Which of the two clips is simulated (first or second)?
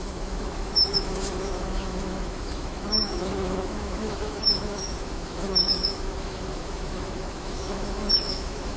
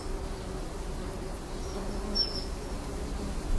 first